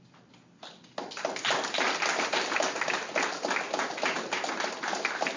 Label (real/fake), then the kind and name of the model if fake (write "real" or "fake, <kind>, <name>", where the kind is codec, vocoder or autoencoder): real